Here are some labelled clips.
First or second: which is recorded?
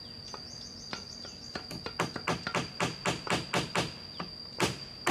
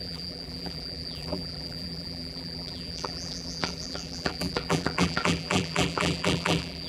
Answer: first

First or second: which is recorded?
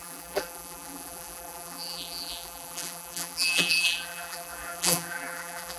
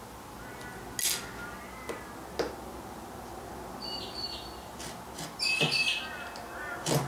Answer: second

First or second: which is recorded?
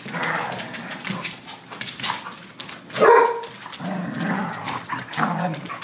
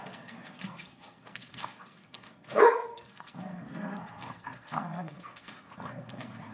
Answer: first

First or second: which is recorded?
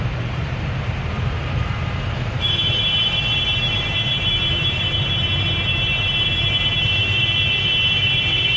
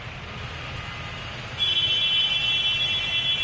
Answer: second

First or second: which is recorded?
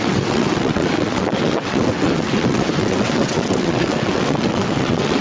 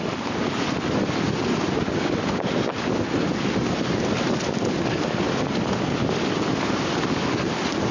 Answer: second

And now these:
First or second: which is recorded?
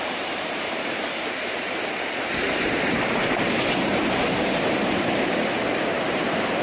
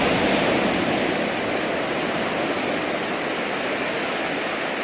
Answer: second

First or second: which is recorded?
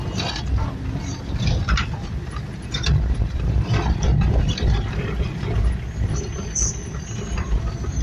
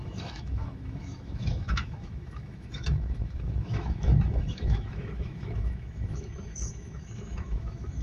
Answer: first